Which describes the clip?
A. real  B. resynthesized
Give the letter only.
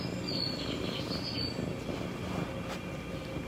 A